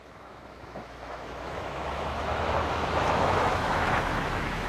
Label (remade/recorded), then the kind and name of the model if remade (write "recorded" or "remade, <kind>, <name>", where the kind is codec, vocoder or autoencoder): remade, autoencoder, DAC-VAE